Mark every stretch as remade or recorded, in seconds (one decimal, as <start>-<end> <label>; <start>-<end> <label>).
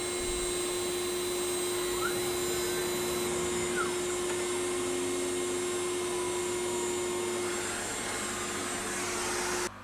0.0-9.8 recorded